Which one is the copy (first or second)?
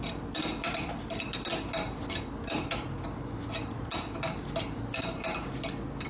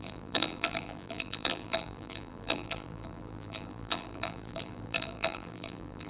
second